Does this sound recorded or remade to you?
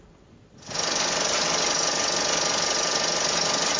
recorded